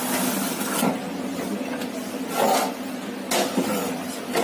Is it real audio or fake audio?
real